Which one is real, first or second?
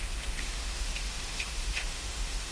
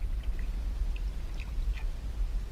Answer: second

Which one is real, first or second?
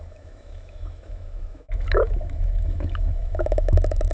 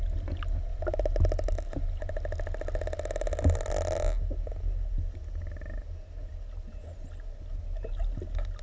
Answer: second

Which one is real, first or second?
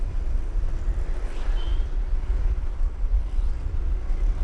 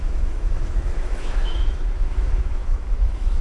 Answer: first